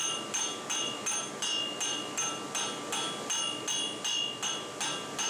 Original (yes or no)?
yes